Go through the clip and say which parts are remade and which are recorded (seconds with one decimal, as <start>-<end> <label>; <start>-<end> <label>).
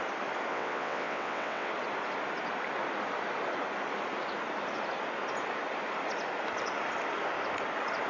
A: 0.0-0.5 recorded; 0.5-1.7 remade; 1.7-8.1 recorded